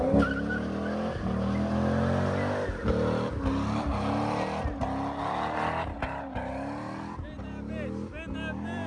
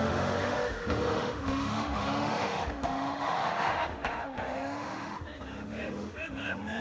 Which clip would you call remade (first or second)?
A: second